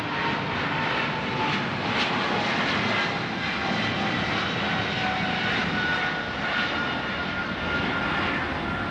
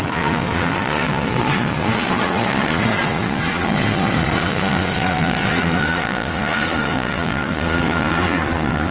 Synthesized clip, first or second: second